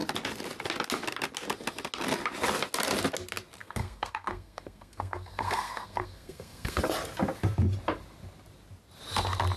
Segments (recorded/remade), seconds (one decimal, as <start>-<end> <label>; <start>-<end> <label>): 0.0-3.6 recorded; 3.6-6.8 remade; 6.8-9.6 recorded

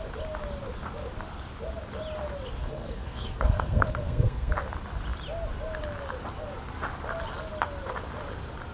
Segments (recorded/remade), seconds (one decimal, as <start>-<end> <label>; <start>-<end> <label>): 0.0-2.6 recorded; 2.6-4.5 remade; 4.5-8.7 recorded